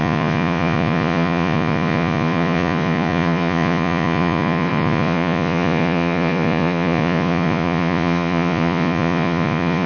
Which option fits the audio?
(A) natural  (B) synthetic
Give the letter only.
B